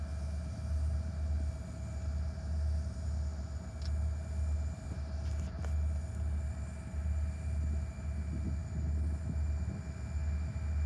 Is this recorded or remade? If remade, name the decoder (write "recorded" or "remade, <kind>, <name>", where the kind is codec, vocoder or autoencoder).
recorded